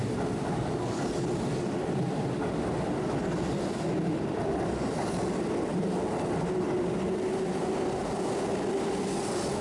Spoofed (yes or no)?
no